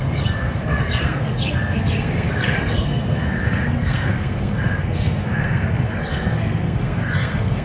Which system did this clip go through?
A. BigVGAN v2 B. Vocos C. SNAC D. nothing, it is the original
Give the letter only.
C